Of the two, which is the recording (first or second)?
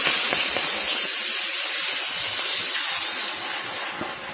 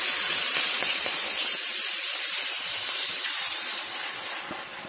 first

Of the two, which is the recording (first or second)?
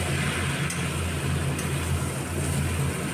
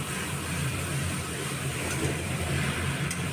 first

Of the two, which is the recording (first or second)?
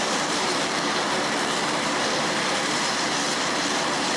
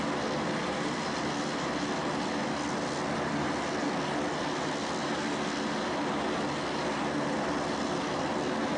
second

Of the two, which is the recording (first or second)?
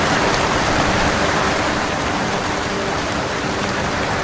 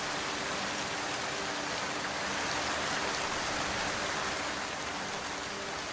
second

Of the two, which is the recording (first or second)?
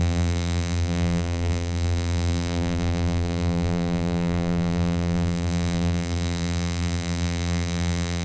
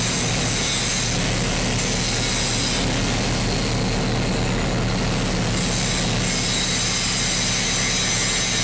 second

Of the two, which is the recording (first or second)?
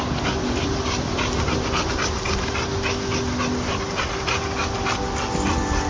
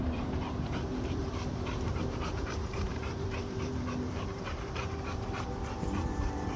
first